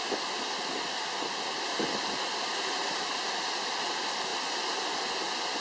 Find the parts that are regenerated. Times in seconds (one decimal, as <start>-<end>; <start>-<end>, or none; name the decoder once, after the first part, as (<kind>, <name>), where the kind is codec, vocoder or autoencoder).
none